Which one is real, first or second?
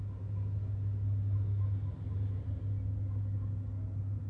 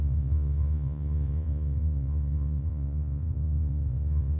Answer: first